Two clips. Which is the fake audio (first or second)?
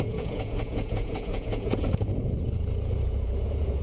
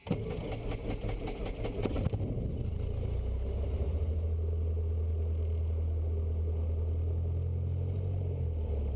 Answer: first